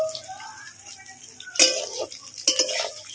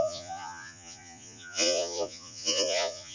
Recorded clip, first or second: first